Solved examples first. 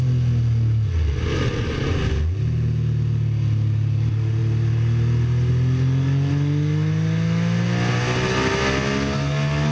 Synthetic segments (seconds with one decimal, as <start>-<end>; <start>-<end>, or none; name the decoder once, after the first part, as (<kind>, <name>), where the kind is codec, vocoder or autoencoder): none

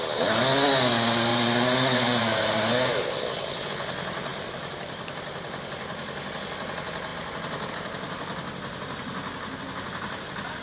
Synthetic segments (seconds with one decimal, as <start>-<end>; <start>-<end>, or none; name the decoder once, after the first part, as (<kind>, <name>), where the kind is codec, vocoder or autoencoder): 1.3-3.7 (vocoder, BigVGAN v2); 4.3-6.4

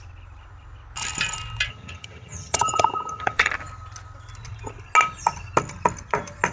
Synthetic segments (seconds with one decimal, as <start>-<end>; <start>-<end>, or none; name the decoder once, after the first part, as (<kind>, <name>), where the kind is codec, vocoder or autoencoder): 1.7-3.5 (vocoder, HiFi-GAN)